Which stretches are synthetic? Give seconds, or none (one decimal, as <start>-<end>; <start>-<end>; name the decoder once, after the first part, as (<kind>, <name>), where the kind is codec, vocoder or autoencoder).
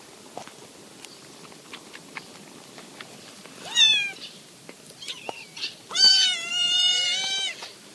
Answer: 0.0-3.9 (vocoder, BigVGAN v2); 6.5-7.0